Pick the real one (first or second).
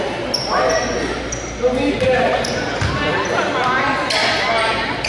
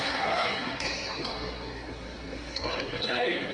first